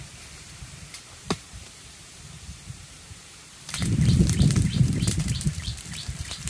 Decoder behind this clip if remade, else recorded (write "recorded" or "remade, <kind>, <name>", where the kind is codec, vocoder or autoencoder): remade, vocoder, BigVGAN v2